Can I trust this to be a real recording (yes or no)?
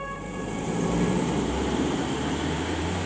no